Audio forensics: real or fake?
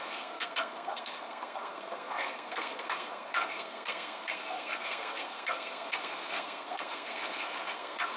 fake